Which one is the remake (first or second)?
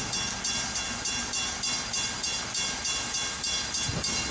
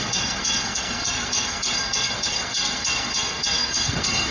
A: second